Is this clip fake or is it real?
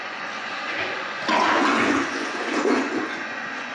fake